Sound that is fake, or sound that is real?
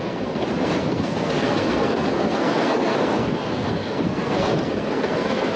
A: fake